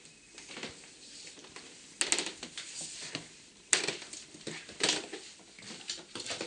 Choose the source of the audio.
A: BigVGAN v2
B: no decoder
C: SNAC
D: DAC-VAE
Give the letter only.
B